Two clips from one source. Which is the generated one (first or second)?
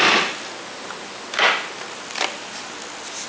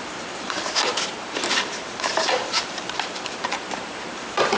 second